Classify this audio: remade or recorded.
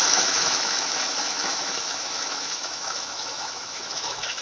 remade